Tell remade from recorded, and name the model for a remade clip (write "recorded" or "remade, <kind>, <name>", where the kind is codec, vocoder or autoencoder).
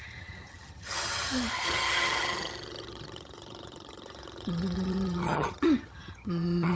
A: remade, vocoder, HiFi-GAN